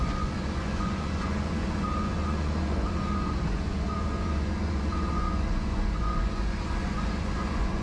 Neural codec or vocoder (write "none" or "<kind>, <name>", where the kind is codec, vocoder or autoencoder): vocoder, Vocos